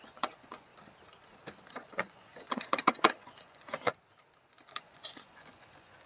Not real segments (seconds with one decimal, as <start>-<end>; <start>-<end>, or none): 0.0-0.7; 1.7-3.9; 4.7-6.1